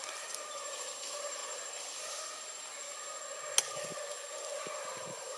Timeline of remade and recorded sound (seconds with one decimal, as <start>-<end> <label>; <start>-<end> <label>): 0.0-1.4 remade; 1.4-4.6 recorded; 4.6-5.4 remade